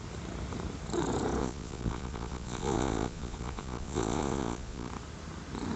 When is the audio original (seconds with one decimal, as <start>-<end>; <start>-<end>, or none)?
0.0-1.4; 4.9-5.8